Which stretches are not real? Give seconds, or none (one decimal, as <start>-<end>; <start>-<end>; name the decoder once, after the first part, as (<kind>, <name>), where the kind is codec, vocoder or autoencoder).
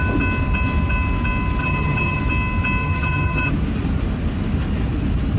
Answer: 1.6-2.2 (vocoder, HiFi-GAN); 2.8-3.5